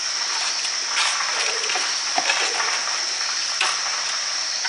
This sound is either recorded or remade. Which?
recorded